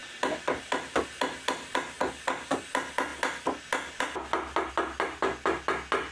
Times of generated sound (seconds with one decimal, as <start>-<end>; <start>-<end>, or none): none